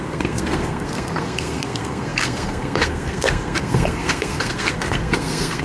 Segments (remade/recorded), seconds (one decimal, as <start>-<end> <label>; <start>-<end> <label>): 0.0-5.6 remade

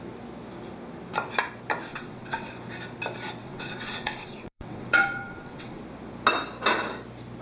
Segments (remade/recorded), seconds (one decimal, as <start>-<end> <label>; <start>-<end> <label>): 0.0-1.9 recorded; 1.9-2.5 remade; 2.5-3.4 recorded; 3.4-5.8 remade; 5.8-7.4 recorded

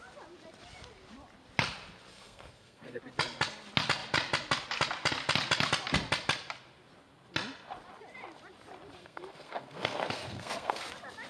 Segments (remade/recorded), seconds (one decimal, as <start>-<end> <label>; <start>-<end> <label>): 0.0-2.1 recorded; 2.1-3.0 remade; 3.0-9.0 recorded; 9.0-10.8 remade; 10.8-11.3 recorded

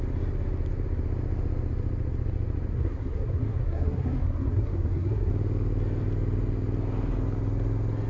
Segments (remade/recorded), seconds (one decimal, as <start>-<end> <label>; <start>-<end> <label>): 0.0-2.7 recorded; 2.7-5.3 remade; 5.3-8.1 recorded

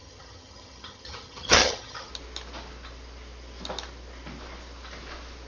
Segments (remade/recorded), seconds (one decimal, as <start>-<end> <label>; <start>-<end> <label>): 0.0-2.1 remade; 2.1-5.5 recorded

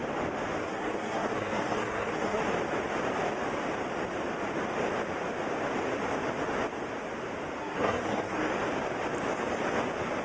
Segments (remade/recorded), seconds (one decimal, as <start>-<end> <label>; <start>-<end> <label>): 0.0-0.6 recorded; 0.6-2.4 remade; 2.4-7.6 recorded; 7.6-8.5 remade; 8.5-10.2 recorded

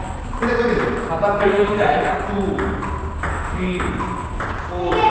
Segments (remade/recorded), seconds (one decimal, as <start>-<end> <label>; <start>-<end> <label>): 0.0-1.5 recorded; 1.5-2.1 remade; 2.1-3.3 recorded; 3.3-3.9 remade; 3.9-5.1 recorded

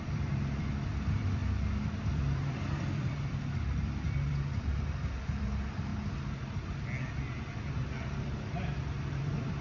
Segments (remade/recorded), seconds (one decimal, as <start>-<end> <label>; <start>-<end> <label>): 0.0-1.4 remade; 1.4-1.9 recorded; 1.9-5.9 remade; 5.9-7.6 recorded; 7.6-9.6 remade